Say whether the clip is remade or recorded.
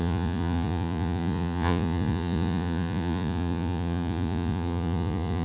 remade